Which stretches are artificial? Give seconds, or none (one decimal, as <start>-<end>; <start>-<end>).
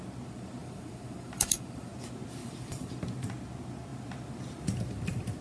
0.6-1.9; 2.4-2.9